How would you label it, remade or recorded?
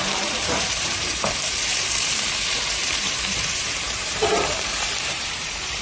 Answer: remade